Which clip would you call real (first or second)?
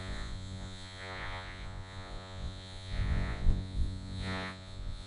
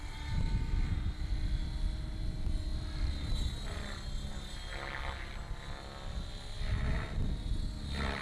second